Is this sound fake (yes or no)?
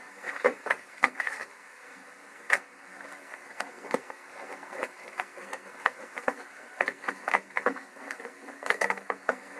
yes